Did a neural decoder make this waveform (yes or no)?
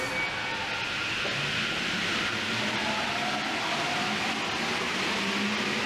no